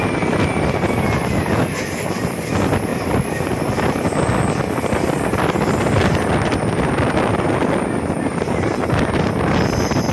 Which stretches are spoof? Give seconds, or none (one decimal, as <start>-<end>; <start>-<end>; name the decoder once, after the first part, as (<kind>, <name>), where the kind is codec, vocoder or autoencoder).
none